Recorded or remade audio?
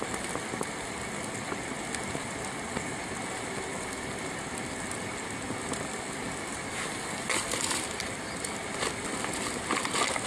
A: recorded